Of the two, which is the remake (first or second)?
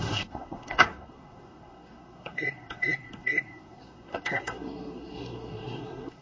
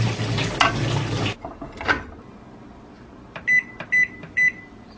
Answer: first